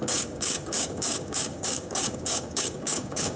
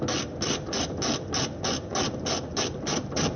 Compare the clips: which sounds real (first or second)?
second